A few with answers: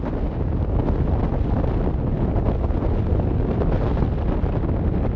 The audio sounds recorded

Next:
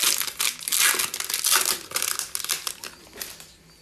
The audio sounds recorded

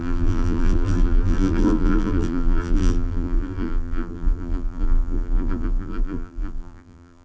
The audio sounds remade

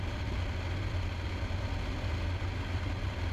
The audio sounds recorded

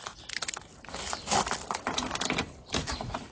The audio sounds recorded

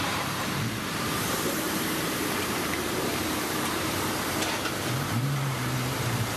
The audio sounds remade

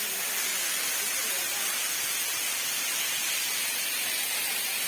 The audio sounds recorded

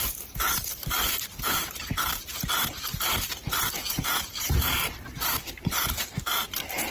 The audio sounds remade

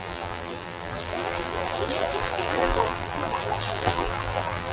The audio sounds remade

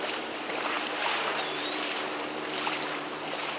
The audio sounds remade